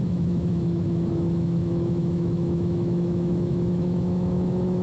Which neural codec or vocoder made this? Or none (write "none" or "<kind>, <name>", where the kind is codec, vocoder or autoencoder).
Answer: autoencoder, DAC-VAE